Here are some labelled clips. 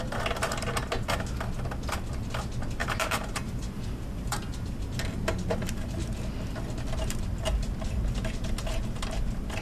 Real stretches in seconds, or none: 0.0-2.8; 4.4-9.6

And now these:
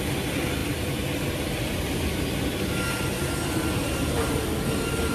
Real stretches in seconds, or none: 0.0-0.6; 2.2-5.1

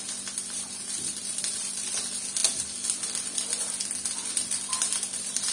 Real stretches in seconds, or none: 2.4-4.7

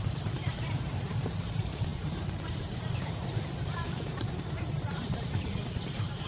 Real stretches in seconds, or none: none

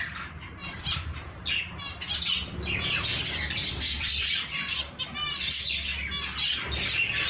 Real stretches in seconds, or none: 0.0-0.6; 5.0-7.3

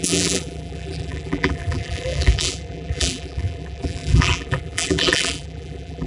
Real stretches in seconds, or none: none